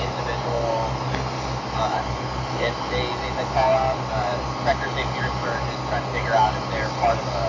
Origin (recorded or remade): recorded